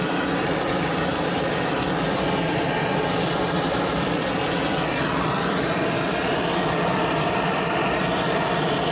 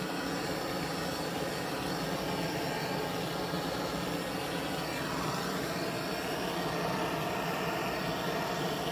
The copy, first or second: first